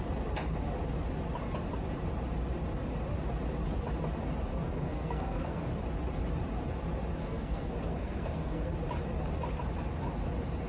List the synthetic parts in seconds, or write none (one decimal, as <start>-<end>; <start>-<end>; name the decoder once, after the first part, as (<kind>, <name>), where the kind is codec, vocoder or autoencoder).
4.5-5.7 (codec, SNAC); 7.2-8.7